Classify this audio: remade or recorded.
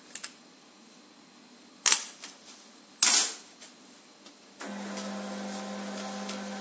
recorded